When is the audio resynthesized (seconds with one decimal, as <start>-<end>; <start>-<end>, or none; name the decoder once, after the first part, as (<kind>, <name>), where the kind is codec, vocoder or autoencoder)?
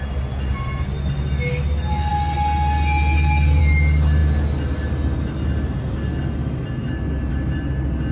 none